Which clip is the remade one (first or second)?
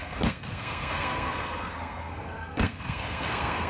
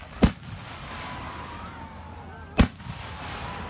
first